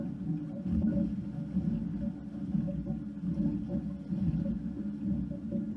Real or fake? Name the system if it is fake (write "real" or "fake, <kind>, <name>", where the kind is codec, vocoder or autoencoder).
real